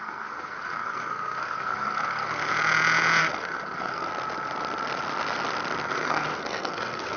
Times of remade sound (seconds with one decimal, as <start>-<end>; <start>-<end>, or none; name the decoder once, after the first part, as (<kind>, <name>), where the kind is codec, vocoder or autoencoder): 0.0-2.5 (codec, SNAC); 3.2-4.1; 5.9-7.2